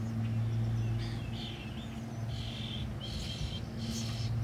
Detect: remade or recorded recorded